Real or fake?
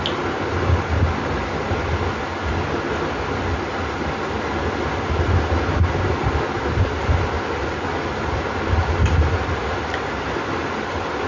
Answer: real